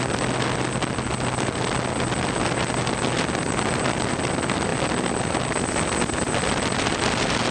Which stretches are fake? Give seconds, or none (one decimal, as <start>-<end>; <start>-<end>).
none